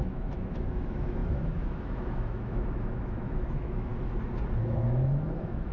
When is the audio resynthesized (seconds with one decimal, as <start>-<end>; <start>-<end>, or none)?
0.0-3.9; 4.6-5.7